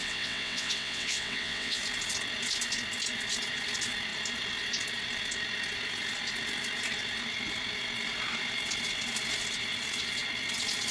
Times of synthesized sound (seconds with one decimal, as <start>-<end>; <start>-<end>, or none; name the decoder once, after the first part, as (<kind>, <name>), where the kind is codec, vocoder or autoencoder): 0.0-1.8 (vocoder, WaveNeXt)